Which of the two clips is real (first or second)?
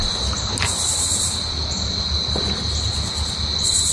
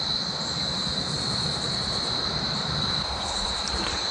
first